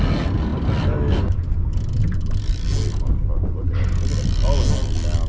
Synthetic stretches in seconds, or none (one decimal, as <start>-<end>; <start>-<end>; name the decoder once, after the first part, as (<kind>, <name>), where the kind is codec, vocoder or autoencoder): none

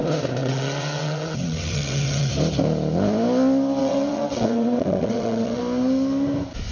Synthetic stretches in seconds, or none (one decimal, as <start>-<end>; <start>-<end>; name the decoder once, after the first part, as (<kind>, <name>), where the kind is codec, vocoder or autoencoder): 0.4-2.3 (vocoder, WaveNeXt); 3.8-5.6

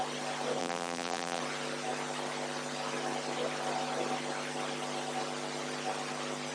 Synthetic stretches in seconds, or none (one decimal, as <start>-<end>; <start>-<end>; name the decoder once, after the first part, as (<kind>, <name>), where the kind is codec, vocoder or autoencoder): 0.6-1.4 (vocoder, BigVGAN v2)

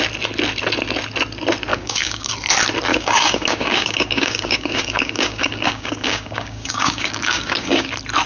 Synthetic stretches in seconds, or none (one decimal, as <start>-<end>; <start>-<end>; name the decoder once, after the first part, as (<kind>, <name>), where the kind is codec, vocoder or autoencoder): 1.7-2.3 (codec, DAC); 2.9-7.9

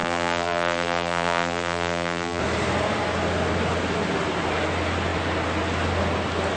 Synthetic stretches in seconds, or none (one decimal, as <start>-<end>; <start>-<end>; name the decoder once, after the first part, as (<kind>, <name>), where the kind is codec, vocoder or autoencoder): 0.0-2.4 (vocoder, BigVGAN v2)